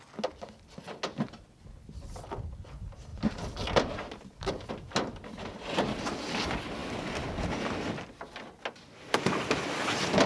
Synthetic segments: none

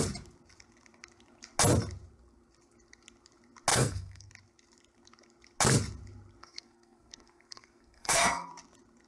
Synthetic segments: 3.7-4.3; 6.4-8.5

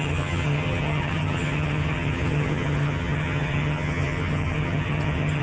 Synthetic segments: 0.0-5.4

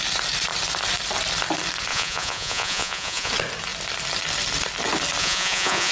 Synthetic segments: 1.9-3.3; 5.2-5.9

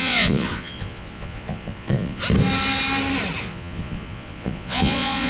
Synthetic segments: 0.0-2.2; 3.4-5.3

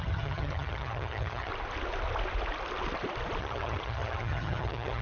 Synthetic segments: 0.0-1.5; 3.4-5.0

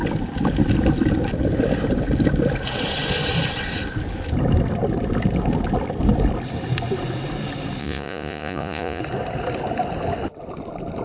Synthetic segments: 7.8-9.0

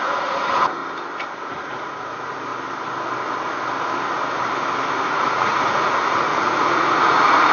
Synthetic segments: 0.0-0.8; 1.5-2.5; 5.0-7.5